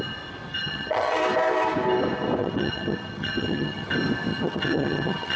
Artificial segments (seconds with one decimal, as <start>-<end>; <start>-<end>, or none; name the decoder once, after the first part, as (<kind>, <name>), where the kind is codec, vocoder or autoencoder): 0.5-1.2 (vocoder, HiFi-GAN); 2.4-3.9; 4.3-5.4